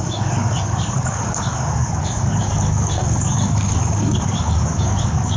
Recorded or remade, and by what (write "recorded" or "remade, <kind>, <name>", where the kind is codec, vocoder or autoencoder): remade, codec, DAC